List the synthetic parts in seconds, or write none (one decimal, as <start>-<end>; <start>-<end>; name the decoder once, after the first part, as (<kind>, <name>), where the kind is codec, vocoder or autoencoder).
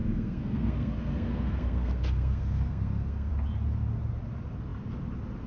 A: 0.0-3.3 (codec, SNAC)